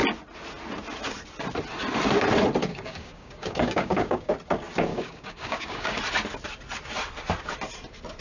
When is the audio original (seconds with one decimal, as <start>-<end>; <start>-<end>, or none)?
0.0-2.7; 4.3-4.9; 6.0-8.2